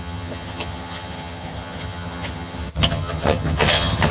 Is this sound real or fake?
fake